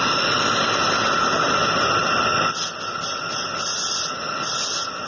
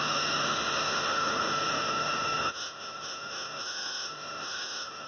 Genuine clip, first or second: first